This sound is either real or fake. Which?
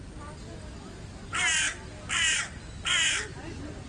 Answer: real